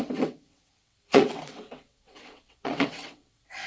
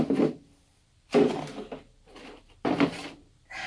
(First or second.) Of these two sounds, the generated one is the first